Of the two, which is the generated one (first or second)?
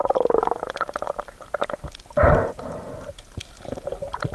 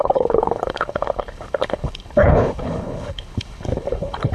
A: second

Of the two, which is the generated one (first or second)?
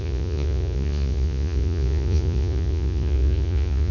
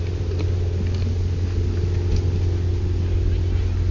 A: first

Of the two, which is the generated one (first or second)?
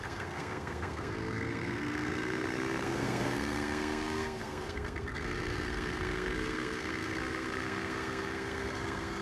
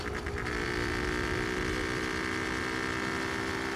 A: first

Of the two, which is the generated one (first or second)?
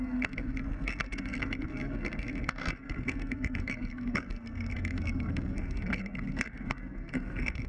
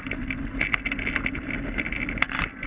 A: first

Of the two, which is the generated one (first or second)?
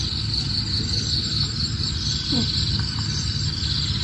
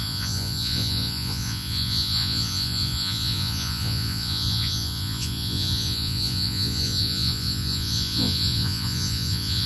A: second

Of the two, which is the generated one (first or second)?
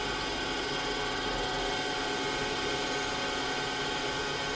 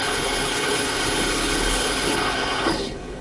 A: second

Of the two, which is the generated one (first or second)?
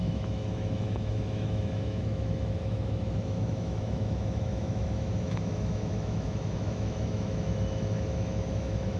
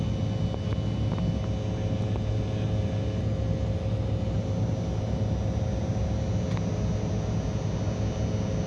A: first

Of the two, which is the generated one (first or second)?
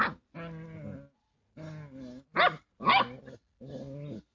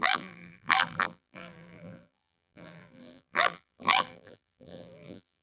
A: second